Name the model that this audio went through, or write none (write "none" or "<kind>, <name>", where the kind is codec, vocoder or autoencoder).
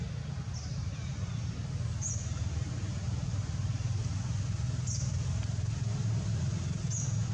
none